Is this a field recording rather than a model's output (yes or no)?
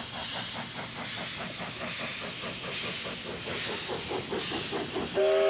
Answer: yes